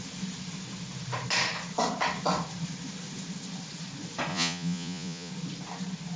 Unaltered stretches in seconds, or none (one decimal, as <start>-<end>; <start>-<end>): 0.0-4.3; 5.3-6.2